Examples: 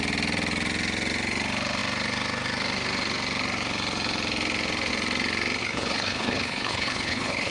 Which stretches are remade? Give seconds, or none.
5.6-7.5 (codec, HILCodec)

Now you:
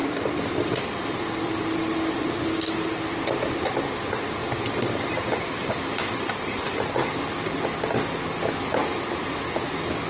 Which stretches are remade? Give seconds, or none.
0.0-1.6 (vocoder, BigVGAN v2); 3.1-3.7; 4.4-6.4

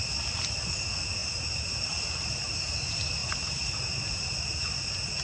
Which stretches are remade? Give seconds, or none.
1.2-1.9 (vocoder, BigVGAN v2); 3.2-4.5

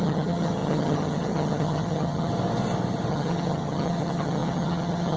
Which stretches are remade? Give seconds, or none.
0.0-2.3 (vocoder, HiFi-GAN); 3.1-5.2

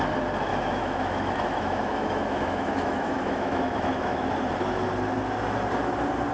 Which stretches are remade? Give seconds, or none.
0.5-4.3 (autoencoder, DAC-VAE)